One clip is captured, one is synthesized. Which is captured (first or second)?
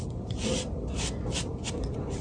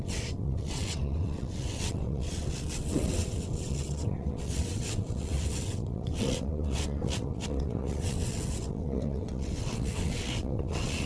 first